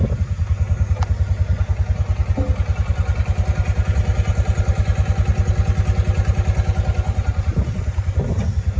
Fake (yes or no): no